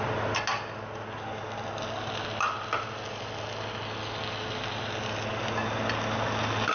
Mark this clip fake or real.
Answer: real